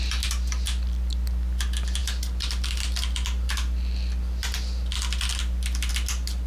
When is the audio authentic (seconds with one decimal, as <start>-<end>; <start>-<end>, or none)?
0.0-6.5